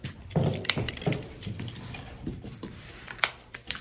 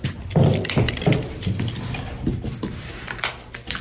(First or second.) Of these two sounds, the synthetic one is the first